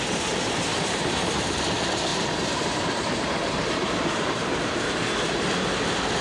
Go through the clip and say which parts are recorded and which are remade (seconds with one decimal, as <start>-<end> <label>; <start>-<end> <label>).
0.0-0.7 recorded; 0.7-1.5 remade; 1.5-2.1 recorded; 2.1-5.8 remade; 5.8-6.2 recorded